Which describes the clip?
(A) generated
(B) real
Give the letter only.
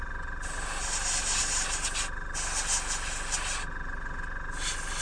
B